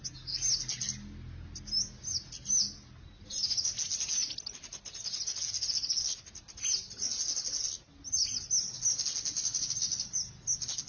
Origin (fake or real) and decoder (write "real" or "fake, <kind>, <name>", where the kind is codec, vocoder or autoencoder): real